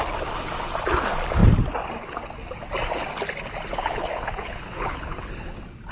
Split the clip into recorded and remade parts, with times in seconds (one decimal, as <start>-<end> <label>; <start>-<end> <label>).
0.0-3.7 recorded; 3.7-5.3 remade; 5.3-5.9 recorded